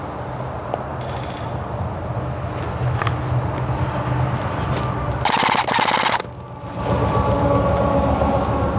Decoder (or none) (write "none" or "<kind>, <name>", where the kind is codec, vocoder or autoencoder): none